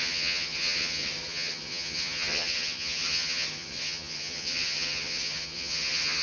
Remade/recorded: remade